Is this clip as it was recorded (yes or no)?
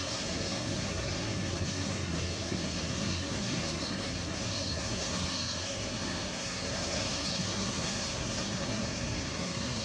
no